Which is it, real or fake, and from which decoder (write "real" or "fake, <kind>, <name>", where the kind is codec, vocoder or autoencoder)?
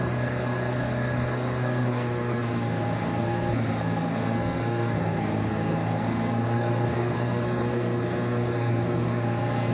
fake, codec, SNAC